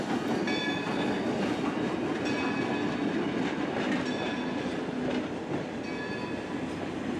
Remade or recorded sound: recorded